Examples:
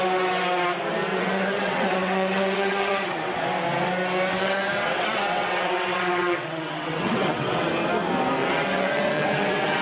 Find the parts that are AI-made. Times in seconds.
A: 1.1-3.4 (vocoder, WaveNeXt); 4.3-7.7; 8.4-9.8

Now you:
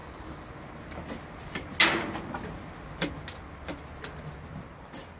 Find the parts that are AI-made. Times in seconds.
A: none

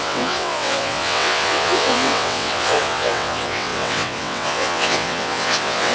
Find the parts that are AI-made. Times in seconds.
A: 0.0-5.9 (vocoder, WaveNeXt)

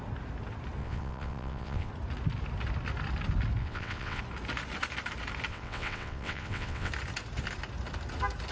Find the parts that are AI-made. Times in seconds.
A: 0.8-1.9 (vocoder, WaveNeXt); 3.6-4.2; 5.5-6.9

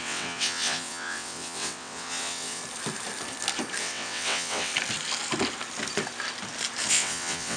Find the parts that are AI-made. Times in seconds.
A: 0.0-2.6 (vocoder, WaveNeXt); 3.8-4.7; 6.9-7.6